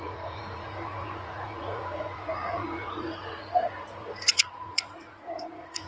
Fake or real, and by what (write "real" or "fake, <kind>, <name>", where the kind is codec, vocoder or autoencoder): fake, vocoder, Vocos